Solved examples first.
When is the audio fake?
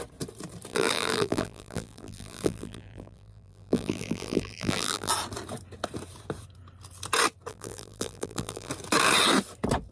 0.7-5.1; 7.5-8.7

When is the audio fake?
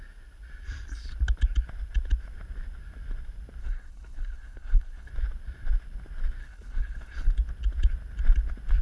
3.6-5.1; 6.4-7.3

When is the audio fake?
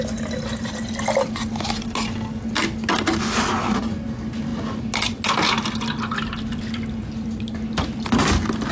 none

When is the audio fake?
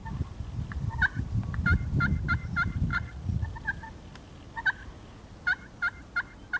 2.9-3.5